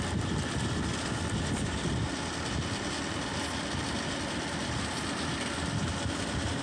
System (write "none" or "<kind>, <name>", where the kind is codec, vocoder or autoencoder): none